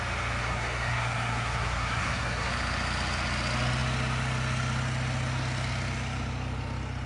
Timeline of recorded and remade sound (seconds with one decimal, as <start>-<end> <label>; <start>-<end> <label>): 0.0-0.4 recorded; 0.4-2.5 remade; 2.5-7.1 recorded